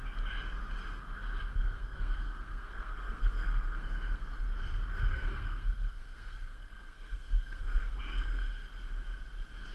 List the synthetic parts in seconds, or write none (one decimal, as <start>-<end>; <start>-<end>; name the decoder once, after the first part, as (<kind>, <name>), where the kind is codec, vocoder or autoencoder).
1.5-4.3 (codec, SNAC); 5.1-8.0